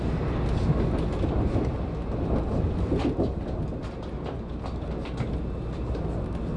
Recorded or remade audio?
recorded